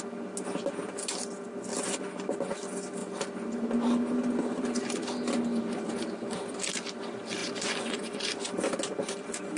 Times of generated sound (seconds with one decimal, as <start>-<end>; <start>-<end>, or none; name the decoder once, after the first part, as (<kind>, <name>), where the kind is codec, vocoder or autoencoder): 7.4-8.3 (vocoder, Vocos)